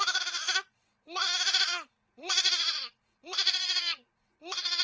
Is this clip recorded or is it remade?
remade